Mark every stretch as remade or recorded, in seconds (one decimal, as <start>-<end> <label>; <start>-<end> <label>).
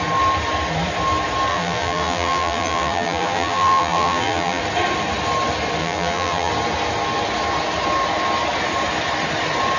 0.0-1.5 recorded; 1.5-4.6 remade; 4.6-5.8 recorded; 5.8-6.5 remade; 6.5-9.8 recorded